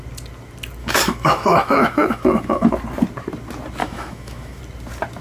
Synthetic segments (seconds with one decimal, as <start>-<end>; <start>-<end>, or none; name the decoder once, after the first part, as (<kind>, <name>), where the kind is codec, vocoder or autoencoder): 0.8-2.7 (autoencoder, DAC-VAE); 3.8-4.6